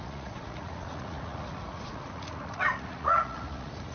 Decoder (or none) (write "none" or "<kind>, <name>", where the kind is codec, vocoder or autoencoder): vocoder, Vocos